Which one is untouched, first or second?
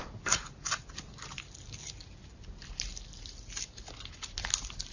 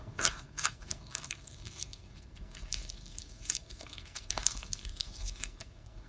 first